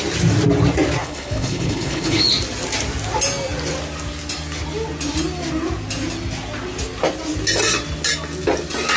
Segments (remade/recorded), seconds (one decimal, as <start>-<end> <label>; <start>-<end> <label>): 0.0-1.0 recorded; 1.0-2.2 remade; 2.2-9.0 recorded